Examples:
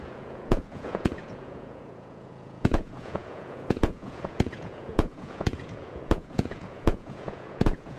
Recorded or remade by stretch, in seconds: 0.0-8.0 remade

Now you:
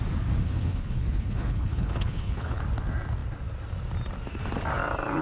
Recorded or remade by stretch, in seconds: 0.0-0.4 recorded; 0.4-2.6 remade; 2.6-5.2 recorded

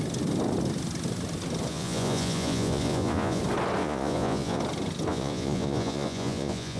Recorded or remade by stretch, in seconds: 0.0-1.7 recorded; 1.7-3.4 remade; 3.4-3.8 recorded; 3.8-4.6 remade; 4.6-5.1 recorded; 5.1-6.8 remade

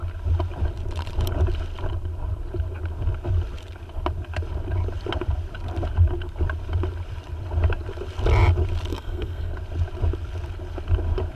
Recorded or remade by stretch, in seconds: 0.0-8.9 recorded; 8.9-9.5 remade; 9.5-11.3 recorded

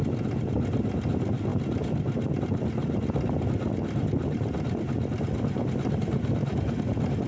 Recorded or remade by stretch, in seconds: 0.0-7.3 recorded